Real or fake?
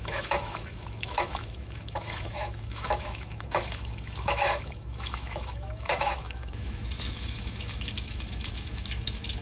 fake